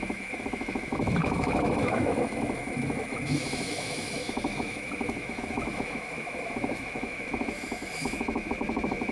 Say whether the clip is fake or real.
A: fake